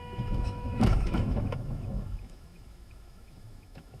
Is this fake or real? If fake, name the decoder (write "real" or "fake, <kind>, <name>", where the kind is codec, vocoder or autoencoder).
fake, autoencoder, DAC-VAE